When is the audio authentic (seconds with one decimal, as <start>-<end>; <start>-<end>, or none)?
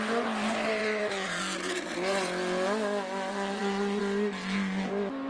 0.0-0.8; 1.4-3.3; 4.0-5.3